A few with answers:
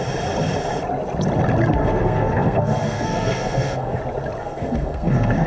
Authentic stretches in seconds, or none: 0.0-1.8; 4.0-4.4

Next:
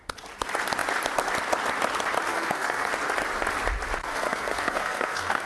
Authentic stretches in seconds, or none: 0.0-2.3; 2.9-4.0

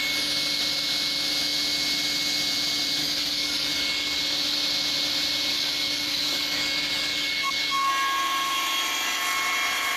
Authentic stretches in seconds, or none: 0.0-3.0; 4.2-5.5; 7.9-10.0

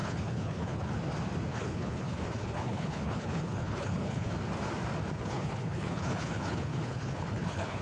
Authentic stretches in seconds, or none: 0.9-1.5; 4.3-5.2